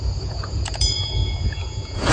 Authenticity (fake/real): fake